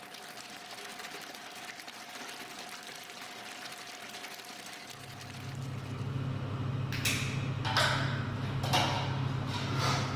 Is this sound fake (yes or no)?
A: no